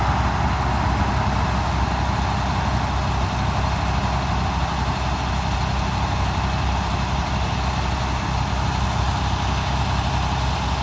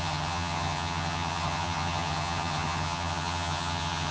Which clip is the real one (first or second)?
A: first